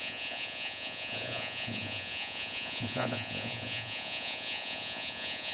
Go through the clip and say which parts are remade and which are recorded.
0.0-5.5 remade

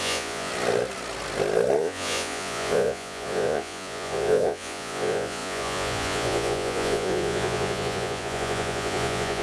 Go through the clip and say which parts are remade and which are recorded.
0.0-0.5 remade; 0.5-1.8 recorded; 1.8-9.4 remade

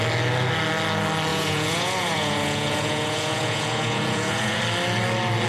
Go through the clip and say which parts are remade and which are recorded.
0.0-1.3 recorded; 1.3-4.6 remade; 4.6-5.5 recorded

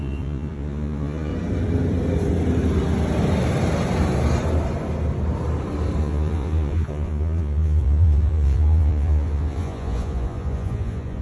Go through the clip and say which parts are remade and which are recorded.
0.0-1.3 remade; 1.3-6.0 recorded; 6.0-11.2 remade

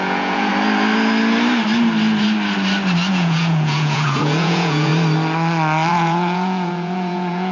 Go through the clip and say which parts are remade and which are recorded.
0.0-0.5 remade; 0.5-3.1 recorded; 3.1-4.9 remade; 4.9-5.9 recorded; 5.9-7.5 remade

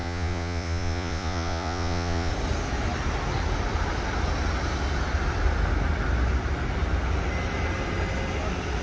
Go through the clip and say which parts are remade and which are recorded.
0.0-2.3 remade; 2.3-8.8 recorded

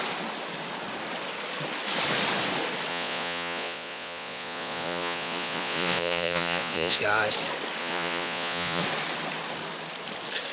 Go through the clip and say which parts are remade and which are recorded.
0.0-2.9 recorded; 2.9-7.0 remade; 7.0-7.8 recorded; 7.8-8.8 remade; 8.8-10.5 recorded